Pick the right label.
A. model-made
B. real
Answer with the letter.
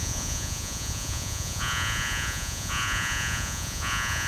A